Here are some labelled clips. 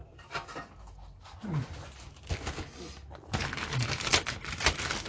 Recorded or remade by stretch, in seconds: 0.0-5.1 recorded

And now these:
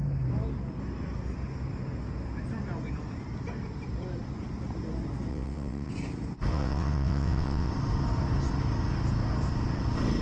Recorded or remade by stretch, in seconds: 0.0-5.3 recorded; 5.3-5.9 remade; 5.9-6.5 recorded; 6.5-7.7 remade; 7.7-10.2 recorded

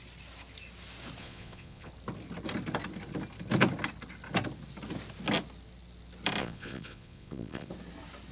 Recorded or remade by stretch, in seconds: 0.0-1.2 recorded; 1.2-1.9 remade; 1.9-6.4 recorded; 6.4-7.7 remade; 7.7-8.3 recorded

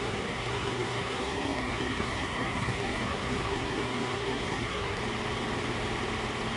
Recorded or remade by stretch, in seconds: 0.0-5.0 remade; 5.0-6.6 recorded

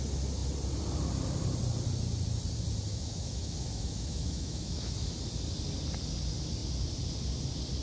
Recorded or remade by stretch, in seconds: 0.0-2.9 recorded; 2.9-5.1 remade; 5.1-7.8 recorded

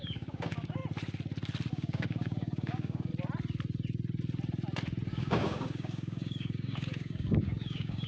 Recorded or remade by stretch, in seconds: 0.0-0.8 remade; 0.8-1.7 recorded; 1.7-3.1 remade; 3.1-5.1 recorded; 5.1-8.1 remade

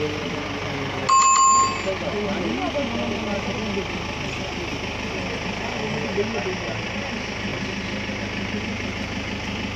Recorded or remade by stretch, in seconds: 0.0-9.8 recorded

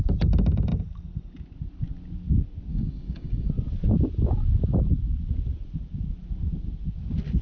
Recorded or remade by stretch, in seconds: 0.0-2.7 recorded; 2.7-3.5 remade; 3.5-7.4 recorded